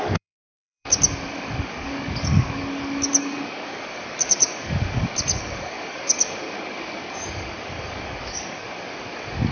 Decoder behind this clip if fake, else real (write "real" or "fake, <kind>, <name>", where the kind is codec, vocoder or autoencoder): fake, codec, DAC